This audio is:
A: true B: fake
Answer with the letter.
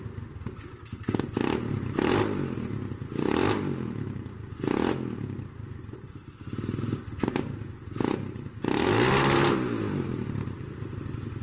A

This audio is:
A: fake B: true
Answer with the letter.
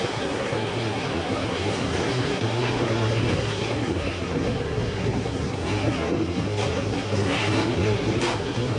A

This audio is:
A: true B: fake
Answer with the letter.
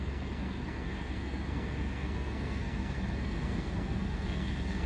B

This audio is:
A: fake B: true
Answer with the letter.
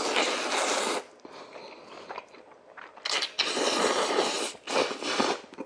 B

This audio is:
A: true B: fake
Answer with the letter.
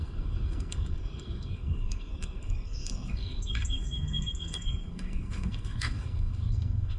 B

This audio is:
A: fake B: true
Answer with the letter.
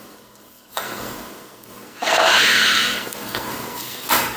A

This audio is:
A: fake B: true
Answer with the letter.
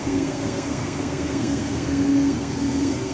A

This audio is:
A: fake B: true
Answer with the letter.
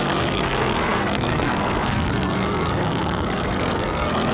A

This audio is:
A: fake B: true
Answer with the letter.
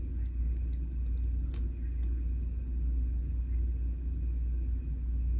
B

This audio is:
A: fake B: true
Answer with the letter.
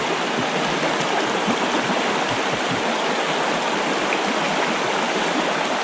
B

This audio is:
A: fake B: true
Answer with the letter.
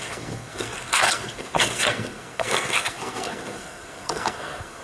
A